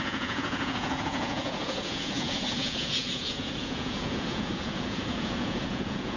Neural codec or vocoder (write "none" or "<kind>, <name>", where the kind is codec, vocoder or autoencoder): vocoder, Vocos